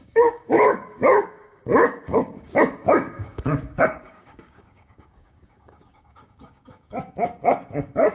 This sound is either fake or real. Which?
fake